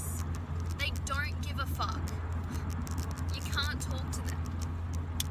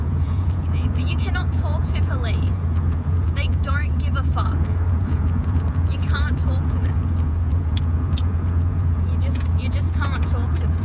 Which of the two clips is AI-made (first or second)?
second